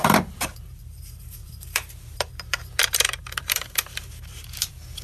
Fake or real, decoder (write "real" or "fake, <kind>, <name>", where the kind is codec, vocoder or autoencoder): fake, vocoder, BigVGAN v2